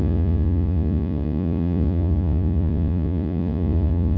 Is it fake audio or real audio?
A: fake